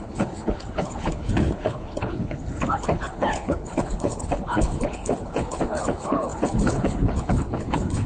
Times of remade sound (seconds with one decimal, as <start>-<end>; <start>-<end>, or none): 0.0-8.1